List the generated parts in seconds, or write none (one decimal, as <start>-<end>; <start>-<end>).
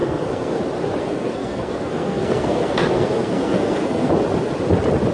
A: 0.0-0.6; 1.0-4.1